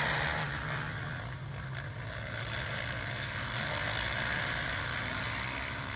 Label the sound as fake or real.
real